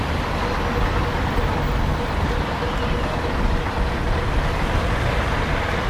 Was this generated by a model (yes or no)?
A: no